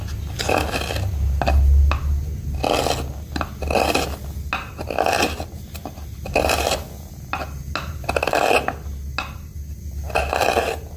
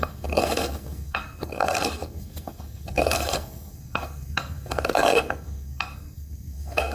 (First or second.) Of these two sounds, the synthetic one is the second